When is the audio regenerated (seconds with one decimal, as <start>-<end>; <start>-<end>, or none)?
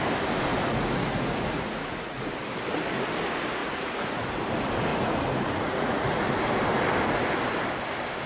0.5-2.3; 3.6-4.3; 4.9-6.2